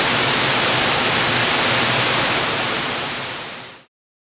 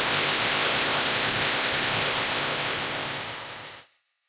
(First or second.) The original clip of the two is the first